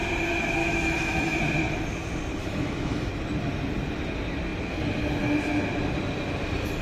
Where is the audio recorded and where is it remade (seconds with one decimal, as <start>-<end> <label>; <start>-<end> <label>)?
0.0-0.6 recorded; 0.6-1.4 remade; 1.4-2.4 recorded; 2.4-3.1 remade; 3.1-6.8 recorded